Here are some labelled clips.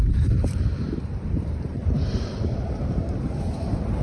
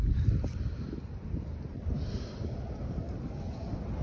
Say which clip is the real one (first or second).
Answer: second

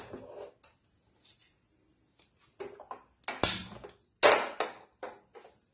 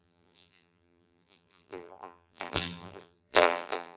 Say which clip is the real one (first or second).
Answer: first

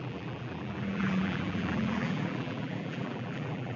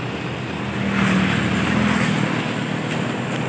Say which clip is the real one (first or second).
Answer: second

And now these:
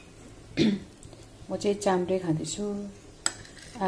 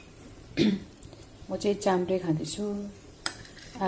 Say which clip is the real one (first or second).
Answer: first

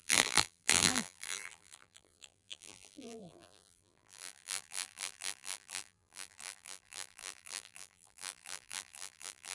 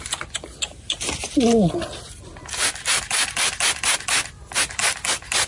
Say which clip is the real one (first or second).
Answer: second